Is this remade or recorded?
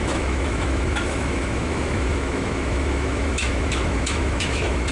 remade